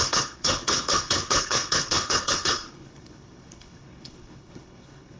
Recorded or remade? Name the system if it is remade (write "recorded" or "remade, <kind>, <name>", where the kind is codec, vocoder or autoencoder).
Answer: remade, codec, HILCodec